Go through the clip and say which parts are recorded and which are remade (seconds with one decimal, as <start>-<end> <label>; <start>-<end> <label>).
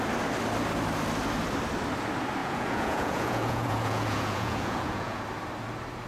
0.0-2.4 recorded; 2.4-5.2 remade; 5.2-6.1 recorded